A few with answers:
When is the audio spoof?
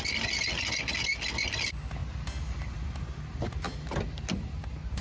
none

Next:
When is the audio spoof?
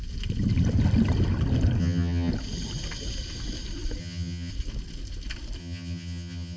1.8-2.3; 4.0-4.5; 5.6-6.6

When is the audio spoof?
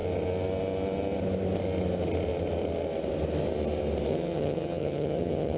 4.1-5.6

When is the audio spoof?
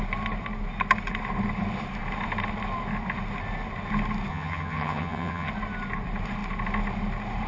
4.3-5.5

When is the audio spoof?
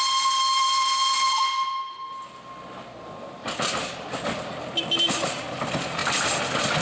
none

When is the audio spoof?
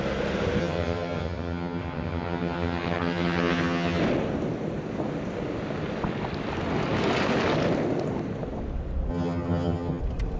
0.6-4.0; 9.1-10.0